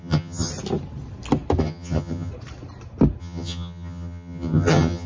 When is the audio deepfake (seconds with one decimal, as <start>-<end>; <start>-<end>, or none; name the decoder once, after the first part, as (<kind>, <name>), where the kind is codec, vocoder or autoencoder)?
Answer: 0.0-0.5 (vocoder, HiFi-GAN); 1.6-2.3; 3.2-5.1